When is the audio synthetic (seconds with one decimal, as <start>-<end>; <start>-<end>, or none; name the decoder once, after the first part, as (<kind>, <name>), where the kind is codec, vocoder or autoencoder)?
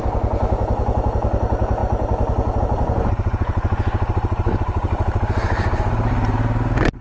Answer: none